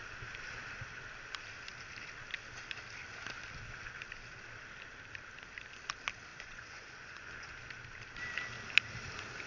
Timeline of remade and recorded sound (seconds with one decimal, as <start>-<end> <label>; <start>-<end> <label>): 0.0-6.3 recorded; 6.3-7.6 remade; 7.6-9.5 recorded

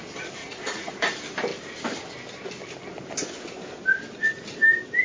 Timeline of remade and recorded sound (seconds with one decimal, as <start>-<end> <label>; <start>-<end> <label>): 0.0-0.4 recorded; 0.4-0.9 remade; 0.9-5.0 recorded

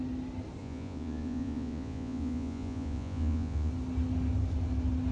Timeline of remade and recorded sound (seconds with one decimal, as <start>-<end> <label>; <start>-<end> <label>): 0.0-0.6 recorded; 0.6-3.7 remade; 3.7-5.1 recorded